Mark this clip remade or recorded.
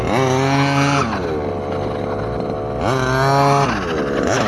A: recorded